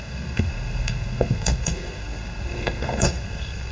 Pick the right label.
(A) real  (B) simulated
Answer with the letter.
B